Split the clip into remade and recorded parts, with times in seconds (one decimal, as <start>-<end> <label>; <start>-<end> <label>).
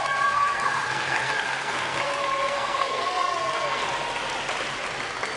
0.0-3.8 remade; 3.8-5.4 recorded